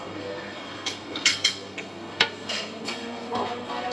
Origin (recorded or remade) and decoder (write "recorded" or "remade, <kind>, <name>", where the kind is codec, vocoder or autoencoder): remade, codec, SNAC